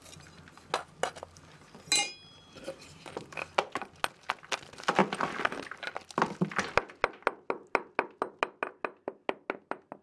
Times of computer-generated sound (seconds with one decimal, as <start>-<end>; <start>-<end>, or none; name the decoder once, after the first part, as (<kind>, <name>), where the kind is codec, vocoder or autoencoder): none